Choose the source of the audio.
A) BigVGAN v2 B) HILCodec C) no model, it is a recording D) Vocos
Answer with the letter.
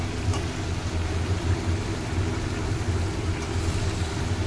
A